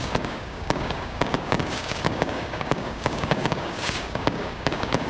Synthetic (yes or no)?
yes